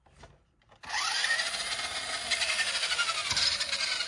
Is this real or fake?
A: real